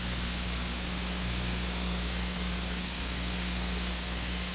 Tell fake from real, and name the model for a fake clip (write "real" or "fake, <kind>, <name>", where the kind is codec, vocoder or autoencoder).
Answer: fake, codec, SNAC